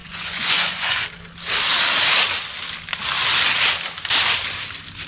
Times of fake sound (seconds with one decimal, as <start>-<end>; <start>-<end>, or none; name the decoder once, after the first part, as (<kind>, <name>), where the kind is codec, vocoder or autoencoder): 0.0-1.0 (vocoder, Vocos)